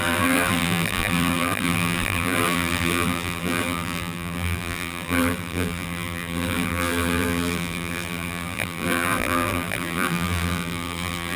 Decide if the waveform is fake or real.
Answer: fake